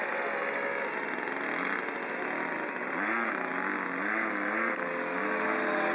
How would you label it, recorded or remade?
recorded